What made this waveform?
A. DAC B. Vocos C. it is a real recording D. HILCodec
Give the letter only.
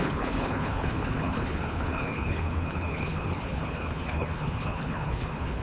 D